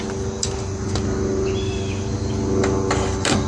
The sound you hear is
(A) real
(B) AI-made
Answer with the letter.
A